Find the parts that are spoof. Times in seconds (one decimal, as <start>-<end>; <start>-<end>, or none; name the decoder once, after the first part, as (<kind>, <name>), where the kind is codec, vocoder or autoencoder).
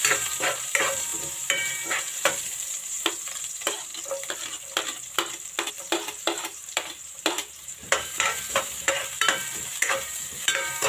0.0-3.9 (vocoder, BigVGAN v2); 5.7-10.9